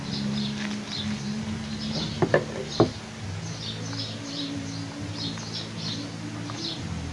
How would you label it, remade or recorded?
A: recorded